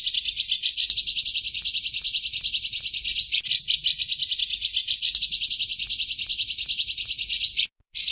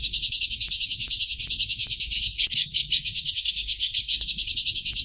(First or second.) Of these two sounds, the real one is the first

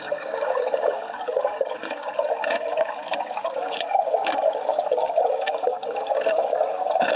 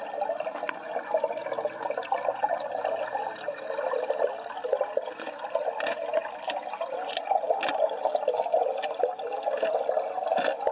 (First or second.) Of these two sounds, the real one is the second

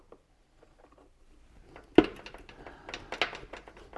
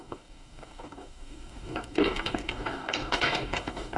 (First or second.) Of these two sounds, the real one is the first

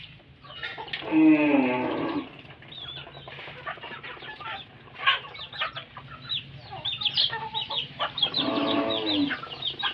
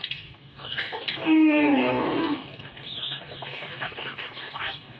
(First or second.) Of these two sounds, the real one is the first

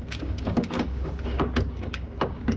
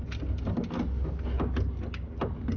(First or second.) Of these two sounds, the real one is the second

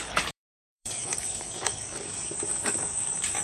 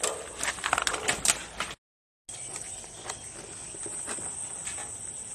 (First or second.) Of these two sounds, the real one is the second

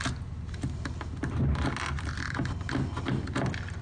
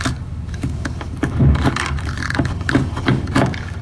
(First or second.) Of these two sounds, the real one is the first